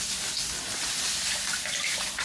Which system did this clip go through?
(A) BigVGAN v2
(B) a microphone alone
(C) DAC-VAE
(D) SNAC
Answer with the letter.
B